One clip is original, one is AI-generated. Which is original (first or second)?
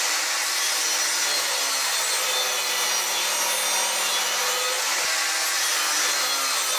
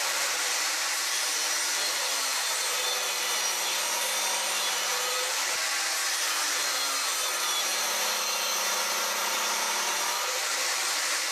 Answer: first